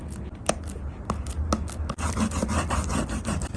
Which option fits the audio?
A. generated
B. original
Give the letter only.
B